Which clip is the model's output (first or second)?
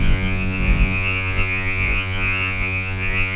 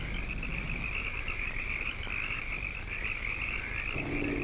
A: first